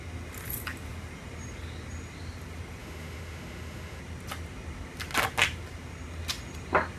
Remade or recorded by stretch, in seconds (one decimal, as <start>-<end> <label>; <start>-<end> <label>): 0.0-2.8 recorded; 2.8-4.0 remade; 4.0-7.0 recorded